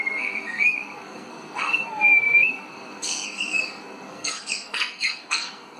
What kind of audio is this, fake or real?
fake